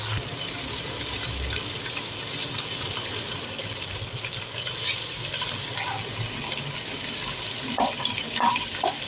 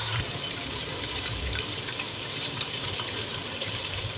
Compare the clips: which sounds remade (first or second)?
second